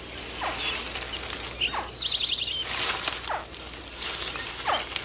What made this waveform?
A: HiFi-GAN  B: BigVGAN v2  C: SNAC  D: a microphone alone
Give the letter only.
D